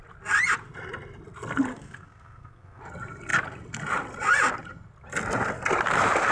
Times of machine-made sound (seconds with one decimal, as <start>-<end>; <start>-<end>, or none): 1.7-2.8